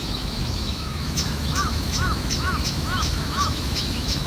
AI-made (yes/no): yes